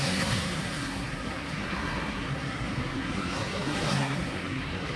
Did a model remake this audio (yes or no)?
yes